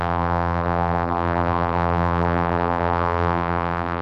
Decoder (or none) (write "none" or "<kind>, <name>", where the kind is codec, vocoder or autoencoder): vocoder, BigVGAN v2